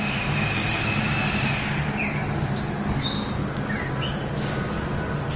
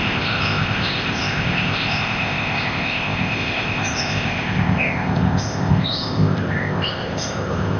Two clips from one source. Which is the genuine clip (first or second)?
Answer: first